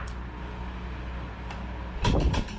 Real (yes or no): yes